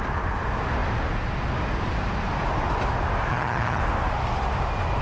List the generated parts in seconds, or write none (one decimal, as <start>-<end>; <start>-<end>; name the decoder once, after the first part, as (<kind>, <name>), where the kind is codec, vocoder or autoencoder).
3.3-3.8 (vocoder, HiFi-GAN)